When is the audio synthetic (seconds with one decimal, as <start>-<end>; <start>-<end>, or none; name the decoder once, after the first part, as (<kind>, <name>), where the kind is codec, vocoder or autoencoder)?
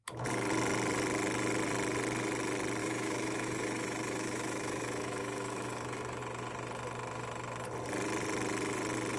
2.8-6.2 (autoencoder, DAC-VAE)